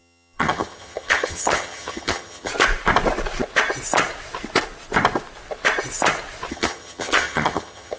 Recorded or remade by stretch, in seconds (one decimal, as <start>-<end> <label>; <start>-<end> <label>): 0.0-2.5 remade; 2.5-6.5 recorded; 6.5-8.0 remade